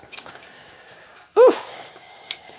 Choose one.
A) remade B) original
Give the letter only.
A